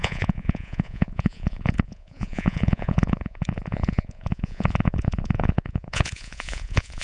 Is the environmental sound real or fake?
fake